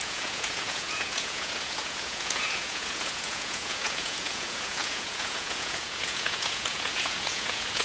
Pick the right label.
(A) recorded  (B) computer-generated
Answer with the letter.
B